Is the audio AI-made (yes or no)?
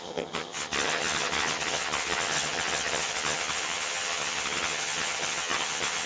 yes